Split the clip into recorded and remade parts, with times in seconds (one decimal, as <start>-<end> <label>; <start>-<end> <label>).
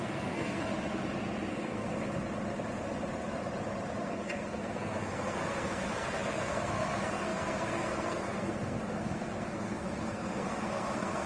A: 0.0-0.7 remade; 0.7-1.5 recorded; 1.5-1.9 remade; 1.9-4.0 recorded; 4.0-11.3 remade